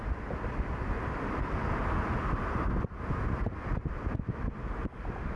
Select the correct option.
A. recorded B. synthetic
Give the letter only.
A